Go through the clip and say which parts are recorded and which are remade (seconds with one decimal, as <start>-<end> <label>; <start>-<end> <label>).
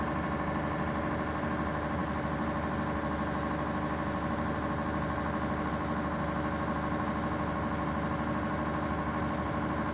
0.0-9.9 recorded